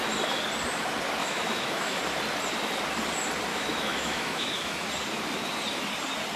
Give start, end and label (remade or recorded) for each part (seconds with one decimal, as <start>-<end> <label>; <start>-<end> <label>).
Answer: 0.0-1.2 recorded; 1.2-2.0 remade; 2.0-3.5 recorded; 3.5-4.9 remade; 4.9-6.4 recorded